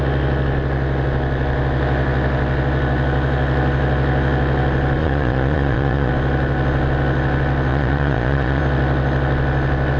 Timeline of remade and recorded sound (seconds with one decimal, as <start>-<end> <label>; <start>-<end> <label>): 0.0-5.0 recorded; 5.0-6.1 remade; 6.1-7.7 recorded; 7.7-8.6 remade; 8.6-10.0 recorded